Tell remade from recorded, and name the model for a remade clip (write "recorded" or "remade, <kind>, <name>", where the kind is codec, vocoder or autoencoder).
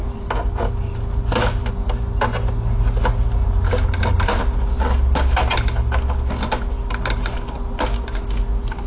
recorded